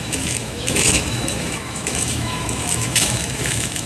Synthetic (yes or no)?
yes